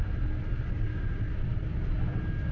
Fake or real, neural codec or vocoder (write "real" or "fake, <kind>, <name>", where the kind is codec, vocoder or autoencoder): real